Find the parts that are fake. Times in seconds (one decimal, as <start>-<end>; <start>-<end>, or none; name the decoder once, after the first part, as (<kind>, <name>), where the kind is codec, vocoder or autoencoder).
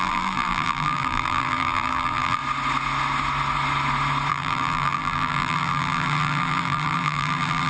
0.0-2.4 (vocoder, BigVGAN v2); 4.3-7.7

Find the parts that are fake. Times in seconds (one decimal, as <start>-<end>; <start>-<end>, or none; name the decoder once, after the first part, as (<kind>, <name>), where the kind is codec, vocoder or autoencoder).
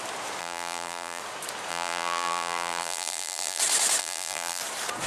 0.4-1.2 (vocoder, BigVGAN v2); 1.7-3.6; 4.0-4.6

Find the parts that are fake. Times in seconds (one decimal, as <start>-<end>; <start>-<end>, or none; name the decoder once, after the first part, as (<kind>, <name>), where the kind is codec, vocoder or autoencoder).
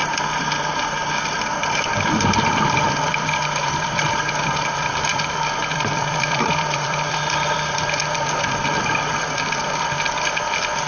1.2-1.9 (vocoder, BigVGAN v2); 2.5-10.9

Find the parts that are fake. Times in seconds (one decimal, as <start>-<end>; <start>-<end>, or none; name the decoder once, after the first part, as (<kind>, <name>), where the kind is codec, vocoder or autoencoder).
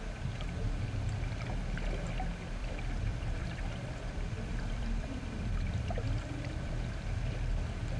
2.6-6.7 (vocoder, BigVGAN v2)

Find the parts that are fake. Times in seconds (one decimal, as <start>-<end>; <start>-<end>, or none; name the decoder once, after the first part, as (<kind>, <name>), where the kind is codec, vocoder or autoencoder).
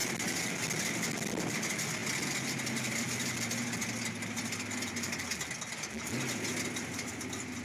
none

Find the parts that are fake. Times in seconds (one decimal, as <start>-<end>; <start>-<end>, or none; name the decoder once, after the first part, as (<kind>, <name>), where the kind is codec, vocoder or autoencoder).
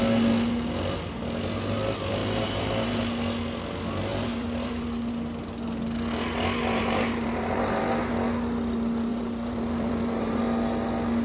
2.2-3.0 (vocoder, BigVGAN v2); 4.1-5.1; 6.7-8.1; 9.1-10.4